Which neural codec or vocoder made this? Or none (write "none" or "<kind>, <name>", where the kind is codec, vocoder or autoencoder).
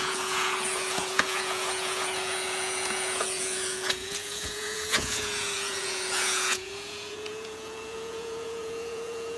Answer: vocoder, Vocos